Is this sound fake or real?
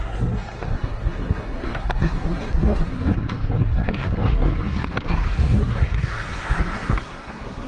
fake